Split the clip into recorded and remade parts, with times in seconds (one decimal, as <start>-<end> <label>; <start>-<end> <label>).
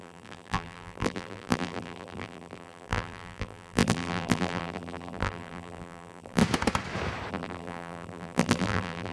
0.0-6.4 remade; 6.4-7.3 recorded; 7.3-9.1 remade